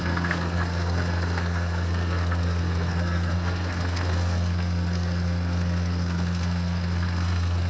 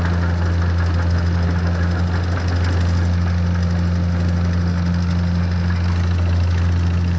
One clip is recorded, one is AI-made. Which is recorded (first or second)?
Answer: second